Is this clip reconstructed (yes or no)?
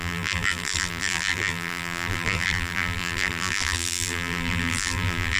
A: yes